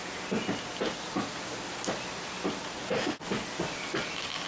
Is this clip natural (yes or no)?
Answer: yes